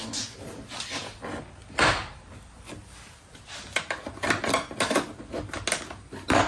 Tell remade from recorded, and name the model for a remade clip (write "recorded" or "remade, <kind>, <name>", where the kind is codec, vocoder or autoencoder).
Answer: recorded